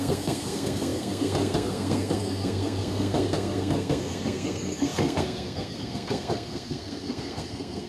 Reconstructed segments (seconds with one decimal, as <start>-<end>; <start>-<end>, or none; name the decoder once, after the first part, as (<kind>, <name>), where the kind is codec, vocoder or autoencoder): 0.0-7.9 (codec, SNAC)